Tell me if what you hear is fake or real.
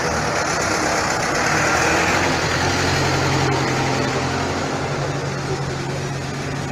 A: real